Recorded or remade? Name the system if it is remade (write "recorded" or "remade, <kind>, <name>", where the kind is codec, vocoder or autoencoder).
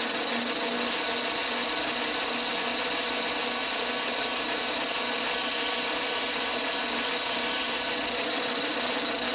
recorded